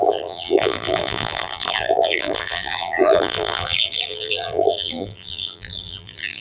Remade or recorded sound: remade